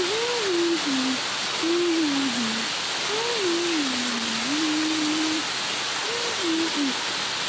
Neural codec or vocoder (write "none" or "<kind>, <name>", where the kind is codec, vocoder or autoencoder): none